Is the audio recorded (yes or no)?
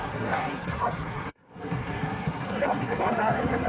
no